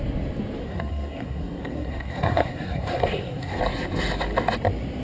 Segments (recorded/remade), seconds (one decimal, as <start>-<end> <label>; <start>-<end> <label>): 0.0-0.6 recorded; 0.6-3.6 remade; 3.6-5.0 recorded